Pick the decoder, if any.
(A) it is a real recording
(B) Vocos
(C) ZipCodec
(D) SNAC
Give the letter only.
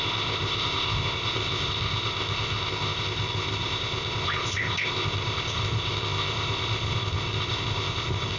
C